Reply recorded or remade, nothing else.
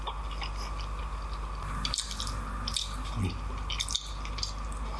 recorded